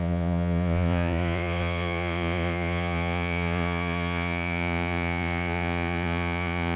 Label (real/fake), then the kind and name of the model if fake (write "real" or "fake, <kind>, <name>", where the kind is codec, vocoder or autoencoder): fake, vocoder, Vocos